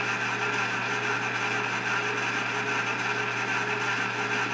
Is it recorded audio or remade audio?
recorded